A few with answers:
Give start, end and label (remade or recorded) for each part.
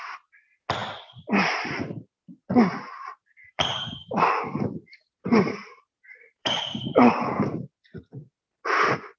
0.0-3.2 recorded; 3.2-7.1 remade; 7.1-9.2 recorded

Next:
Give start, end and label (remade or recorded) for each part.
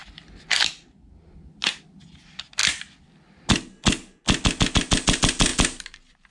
0.0-6.3 recorded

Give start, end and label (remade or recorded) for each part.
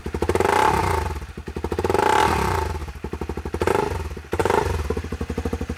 0.0-2.8 recorded; 2.8-3.7 remade; 3.7-5.8 recorded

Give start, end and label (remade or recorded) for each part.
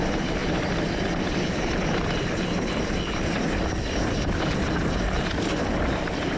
0.0-0.4 recorded; 0.4-4.2 remade; 4.2-6.4 recorded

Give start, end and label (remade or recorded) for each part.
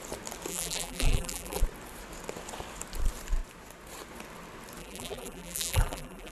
0.0-0.5 recorded; 0.5-1.6 remade; 1.6-4.8 recorded; 4.8-6.3 remade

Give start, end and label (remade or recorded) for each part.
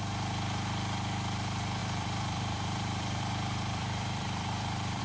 0.0-1.8 recorded; 1.8-5.0 remade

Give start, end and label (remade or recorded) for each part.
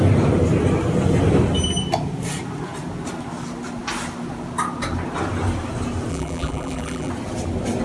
0.0-6.1 recorded; 6.1-7.1 remade; 7.1-7.8 recorded